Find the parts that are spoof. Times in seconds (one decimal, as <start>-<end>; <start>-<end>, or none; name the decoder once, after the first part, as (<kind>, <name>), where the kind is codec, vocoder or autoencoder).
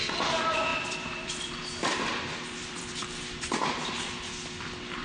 0.7-3.7 (vocoder, BigVGAN v2)